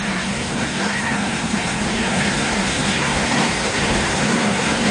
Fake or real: fake